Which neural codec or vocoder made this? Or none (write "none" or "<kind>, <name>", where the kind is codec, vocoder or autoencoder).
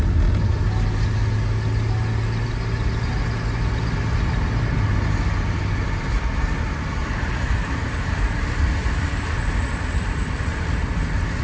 none